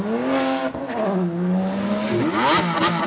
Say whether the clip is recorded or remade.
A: recorded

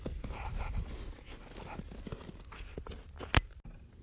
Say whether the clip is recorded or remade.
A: recorded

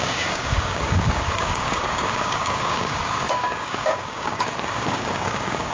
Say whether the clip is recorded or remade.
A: remade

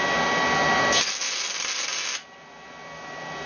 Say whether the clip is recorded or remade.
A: recorded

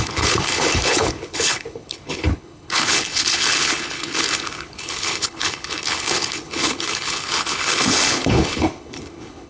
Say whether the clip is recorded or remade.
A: remade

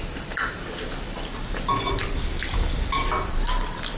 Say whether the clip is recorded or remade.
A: recorded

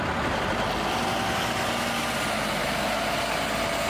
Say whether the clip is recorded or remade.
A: recorded